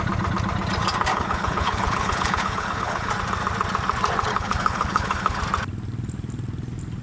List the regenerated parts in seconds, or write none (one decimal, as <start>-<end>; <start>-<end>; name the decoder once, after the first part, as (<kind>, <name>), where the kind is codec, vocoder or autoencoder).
1.1-3.1 (codec, HILCodec); 4.3-5.4